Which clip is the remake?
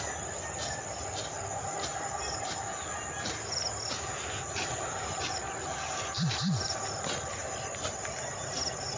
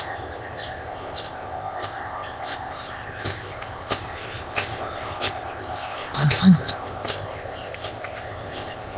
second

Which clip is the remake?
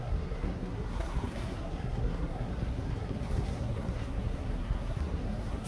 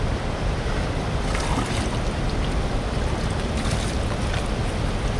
first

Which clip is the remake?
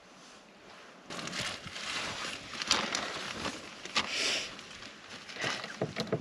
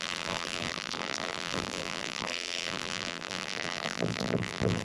second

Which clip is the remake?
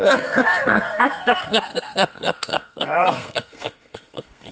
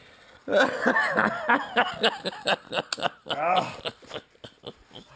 first